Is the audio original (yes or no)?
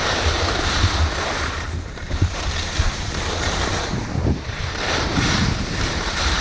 no